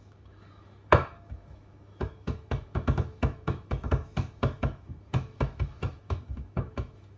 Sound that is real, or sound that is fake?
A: fake